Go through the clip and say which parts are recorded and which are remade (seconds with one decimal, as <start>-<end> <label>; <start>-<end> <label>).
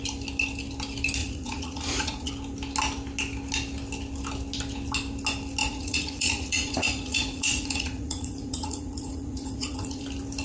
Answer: 0.0-1.2 recorded; 1.2-2.3 remade; 2.3-5.6 recorded; 5.6-10.0 remade; 10.0-10.4 recorded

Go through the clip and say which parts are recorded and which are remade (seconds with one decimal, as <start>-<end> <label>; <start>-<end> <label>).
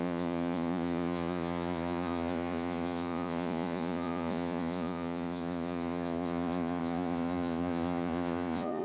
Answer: 0.0-8.8 remade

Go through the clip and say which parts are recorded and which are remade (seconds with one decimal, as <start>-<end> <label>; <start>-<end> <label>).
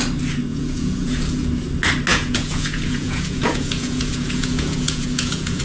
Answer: 0.0-0.5 recorded; 0.5-1.5 remade; 1.5-2.1 recorded; 2.1-5.6 remade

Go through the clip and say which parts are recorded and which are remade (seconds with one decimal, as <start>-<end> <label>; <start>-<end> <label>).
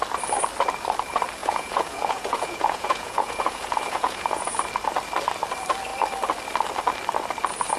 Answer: 0.0-1.4 recorded; 1.4-4.6 remade; 4.6-7.8 recorded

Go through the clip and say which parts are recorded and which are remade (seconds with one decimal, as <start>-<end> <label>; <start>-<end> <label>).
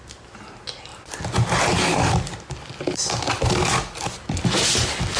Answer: 0.0-5.2 recorded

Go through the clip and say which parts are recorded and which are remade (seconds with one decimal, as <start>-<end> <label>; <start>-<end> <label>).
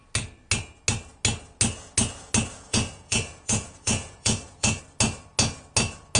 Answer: 0.0-2.7 recorded; 2.7-4.8 remade; 4.8-6.2 recorded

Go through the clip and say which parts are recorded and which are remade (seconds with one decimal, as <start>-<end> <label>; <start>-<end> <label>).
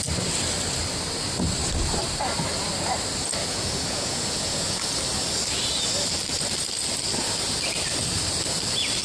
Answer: 0.0-3.4 recorded; 3.4-4.8 remade; 4.8-9.0 recorded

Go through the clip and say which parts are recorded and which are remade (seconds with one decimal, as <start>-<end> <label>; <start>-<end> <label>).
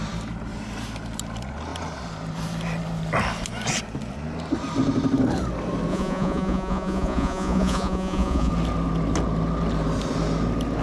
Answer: 0.0-5.9 recorded; 5.9-8.5 remade; 8.5-10.8 recorded